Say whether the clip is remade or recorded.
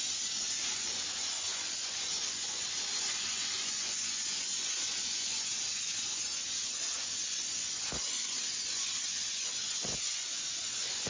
remade